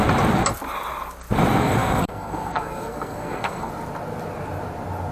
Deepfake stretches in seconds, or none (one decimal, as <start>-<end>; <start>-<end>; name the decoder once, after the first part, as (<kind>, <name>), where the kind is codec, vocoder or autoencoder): 1.6-3.7 (codec, SNAC)